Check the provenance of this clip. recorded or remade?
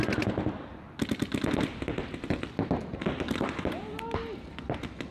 recorded